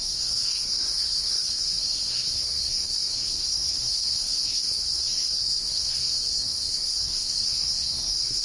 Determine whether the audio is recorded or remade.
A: remade